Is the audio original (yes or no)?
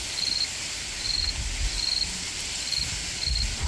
yes